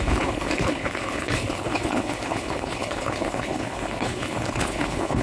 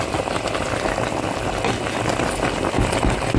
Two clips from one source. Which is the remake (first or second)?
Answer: first